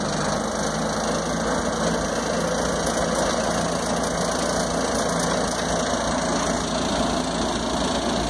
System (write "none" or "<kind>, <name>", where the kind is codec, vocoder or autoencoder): none